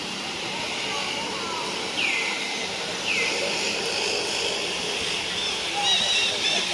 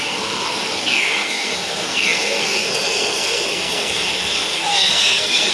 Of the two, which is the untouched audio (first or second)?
first